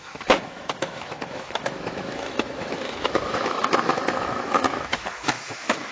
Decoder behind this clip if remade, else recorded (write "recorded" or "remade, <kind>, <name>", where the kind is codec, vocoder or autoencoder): remade, autoencoder, DAC-VAE